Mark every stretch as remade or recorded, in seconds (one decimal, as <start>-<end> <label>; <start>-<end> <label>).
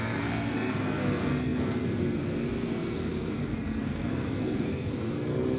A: 0.0-5.6 remade